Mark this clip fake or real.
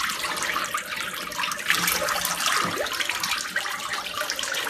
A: real